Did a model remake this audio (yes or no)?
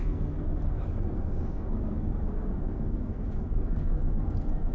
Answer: yes